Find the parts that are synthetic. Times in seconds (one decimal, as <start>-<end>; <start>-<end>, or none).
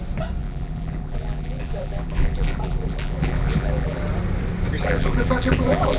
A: 0.4-4.0; 4.8-6.0